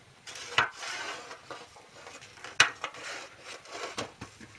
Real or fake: real